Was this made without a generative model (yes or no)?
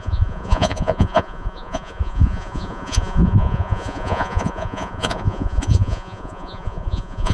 no